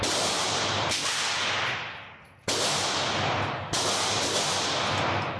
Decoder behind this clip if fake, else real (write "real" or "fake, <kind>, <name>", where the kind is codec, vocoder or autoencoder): real